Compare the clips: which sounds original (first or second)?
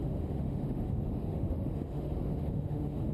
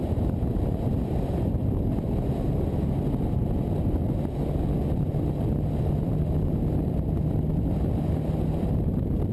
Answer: second